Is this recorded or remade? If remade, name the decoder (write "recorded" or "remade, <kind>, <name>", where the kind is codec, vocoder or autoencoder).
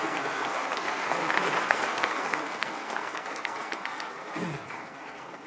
remade, codec, SNAC